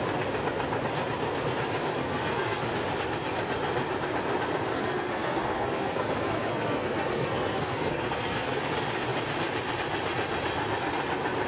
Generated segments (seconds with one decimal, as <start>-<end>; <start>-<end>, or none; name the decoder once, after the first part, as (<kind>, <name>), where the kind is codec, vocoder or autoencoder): 2.0-2.6 (codec, SNAC); 4.7-8.5